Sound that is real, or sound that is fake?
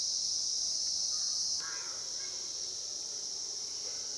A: real